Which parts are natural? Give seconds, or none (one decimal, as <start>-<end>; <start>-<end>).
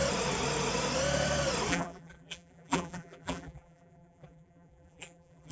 0.0-1.7